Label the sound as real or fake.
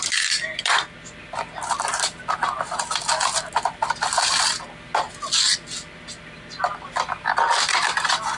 fake